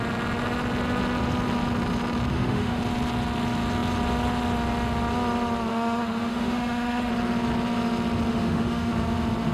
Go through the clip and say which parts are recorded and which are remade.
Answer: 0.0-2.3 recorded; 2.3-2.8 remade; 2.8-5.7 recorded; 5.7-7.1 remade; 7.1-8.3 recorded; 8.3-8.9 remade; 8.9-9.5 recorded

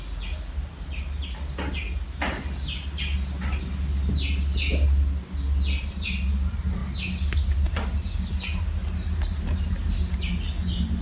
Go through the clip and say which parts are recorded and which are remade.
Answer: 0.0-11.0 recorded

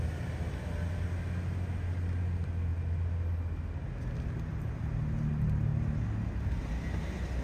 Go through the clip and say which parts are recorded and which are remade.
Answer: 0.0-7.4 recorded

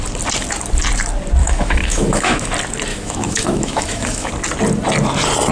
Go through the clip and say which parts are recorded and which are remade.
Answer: 0.0-1.4 recorded; 1.4-2.5 remade; 2.5-2.9 recorded; 2.9-4.3 remade; 4.3-5.5 recorded

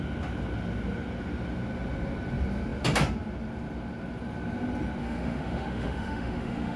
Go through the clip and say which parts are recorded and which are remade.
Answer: 0.0-5.0 recorded; 5.0-6.8 remade

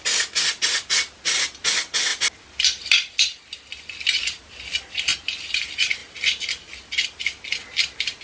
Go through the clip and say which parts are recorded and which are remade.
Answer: 0.0-8.2 recorded

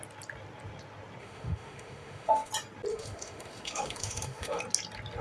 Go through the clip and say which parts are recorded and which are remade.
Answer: 0.0-1.2 recorded; 1.2-2.5 remade; 2.5-2.9 recorded; 2.9-4.6 remade; 4.6-5.2 recorded

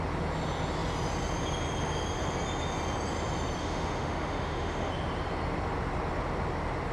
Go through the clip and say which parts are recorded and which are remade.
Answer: 0.0-3.6 recorded; 3.6-4.9 remade; 4.9-6.9 recorded